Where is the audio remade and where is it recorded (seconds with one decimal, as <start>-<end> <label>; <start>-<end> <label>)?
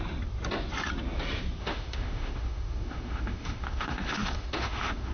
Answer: 0.0-1.6 recorded; 1.6-5.1 remade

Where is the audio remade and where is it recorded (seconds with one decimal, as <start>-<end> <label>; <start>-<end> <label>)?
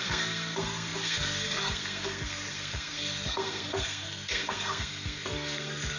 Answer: 0.0-6.0 remade